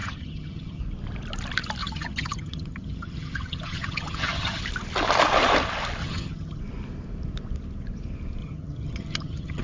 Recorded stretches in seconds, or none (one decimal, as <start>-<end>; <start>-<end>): 0.8-1.8; 4.6-6.0; 6.6-8.4